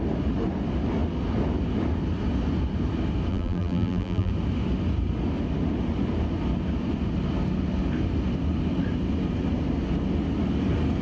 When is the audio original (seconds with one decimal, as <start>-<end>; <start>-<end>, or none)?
0.0-3.3; 4.3-11.0